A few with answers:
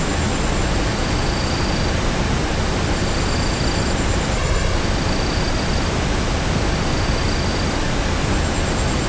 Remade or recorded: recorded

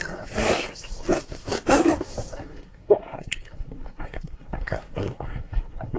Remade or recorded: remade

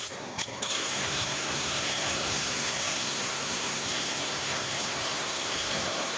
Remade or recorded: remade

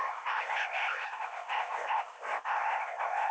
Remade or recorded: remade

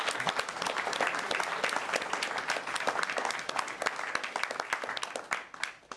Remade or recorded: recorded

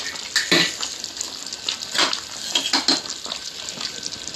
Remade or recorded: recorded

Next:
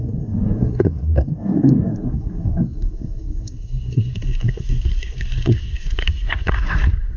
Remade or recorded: remade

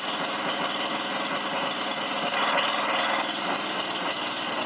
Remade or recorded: recorded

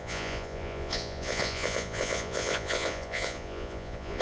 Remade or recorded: remade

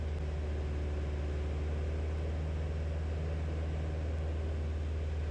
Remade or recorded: recorded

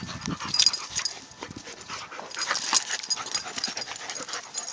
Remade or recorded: recorded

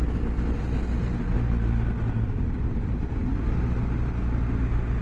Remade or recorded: recorded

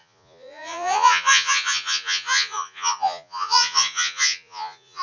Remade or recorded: remade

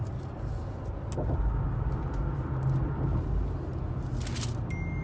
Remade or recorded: recorded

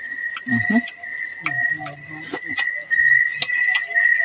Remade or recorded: recorded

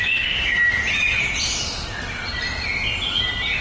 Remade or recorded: recorded